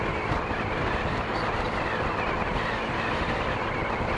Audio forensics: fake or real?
real